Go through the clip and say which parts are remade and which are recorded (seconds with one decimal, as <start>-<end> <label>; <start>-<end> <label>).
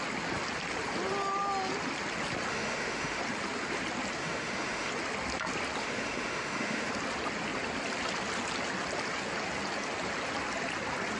0.0-2.5 recorded; 2.5-3.2 remade; 3.2-4.2 recorded; 4.2-4.9 remade; 4.9-5.8 recorded; 5.8-6.9 remade; 6.9-11.2 recorded